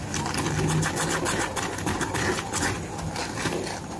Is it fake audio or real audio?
real